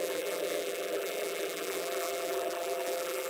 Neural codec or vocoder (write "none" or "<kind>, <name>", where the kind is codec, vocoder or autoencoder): vocoder, BigVGAN v2